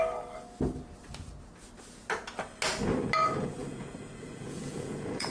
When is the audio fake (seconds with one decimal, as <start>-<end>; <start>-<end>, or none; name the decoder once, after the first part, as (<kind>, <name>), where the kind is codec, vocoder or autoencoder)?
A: 3.6-5.3 (vocoder, Vocos)